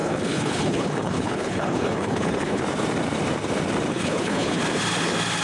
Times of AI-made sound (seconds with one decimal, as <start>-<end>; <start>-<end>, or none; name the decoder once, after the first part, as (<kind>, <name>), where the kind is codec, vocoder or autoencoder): 0.0-2.6 (codec, HILCodec); 3.9-4.6